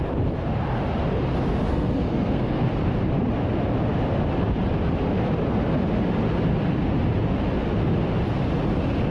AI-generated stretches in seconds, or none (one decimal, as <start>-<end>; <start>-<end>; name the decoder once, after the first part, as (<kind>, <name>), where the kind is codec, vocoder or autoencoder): 1.7-2.6 (codec, SNAC)